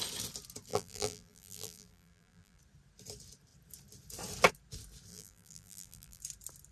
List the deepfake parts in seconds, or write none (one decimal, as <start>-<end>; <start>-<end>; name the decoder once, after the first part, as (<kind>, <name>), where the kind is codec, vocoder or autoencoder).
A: 0.7-2.6 (vocoder, BigVGAN v2); 5.1-6.2